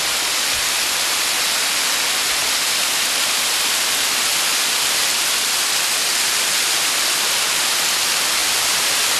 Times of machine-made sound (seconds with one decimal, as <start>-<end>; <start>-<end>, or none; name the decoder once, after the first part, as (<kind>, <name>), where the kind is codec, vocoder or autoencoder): 4.5-7.2 (vocoder, BigVGAN v2)